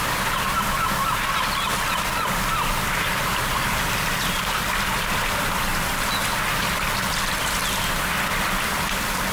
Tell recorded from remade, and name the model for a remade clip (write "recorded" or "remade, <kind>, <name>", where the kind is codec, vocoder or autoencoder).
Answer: recorded